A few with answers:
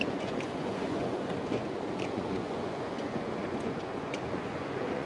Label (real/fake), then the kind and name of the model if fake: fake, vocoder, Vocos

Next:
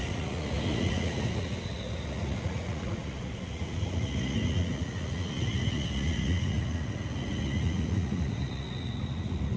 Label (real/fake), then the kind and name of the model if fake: fake, vocoder, Vocos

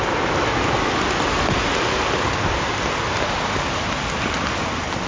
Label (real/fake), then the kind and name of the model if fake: real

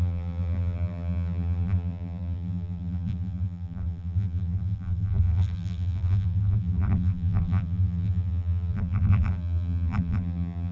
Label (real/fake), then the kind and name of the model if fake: fake, vocoder, BigVGAN v2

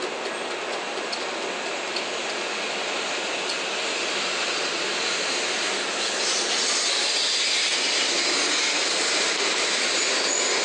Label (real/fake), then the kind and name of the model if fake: real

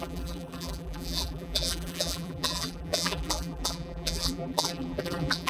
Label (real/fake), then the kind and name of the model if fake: fake, vocoder, BigVGAN v2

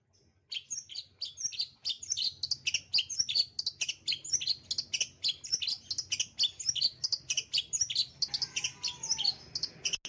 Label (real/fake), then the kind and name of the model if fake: real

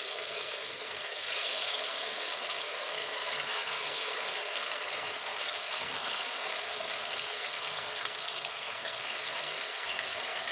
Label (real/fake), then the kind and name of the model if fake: fake, codec, SNAC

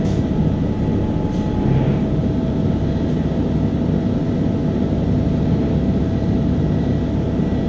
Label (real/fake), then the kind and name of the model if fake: real